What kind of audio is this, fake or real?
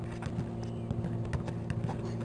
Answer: real